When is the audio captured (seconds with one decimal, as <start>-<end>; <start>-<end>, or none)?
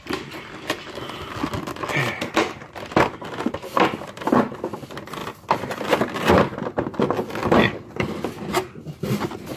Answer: 0.0-9.6